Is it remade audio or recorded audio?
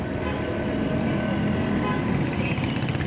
recorded